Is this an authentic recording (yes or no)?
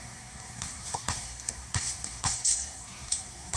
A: no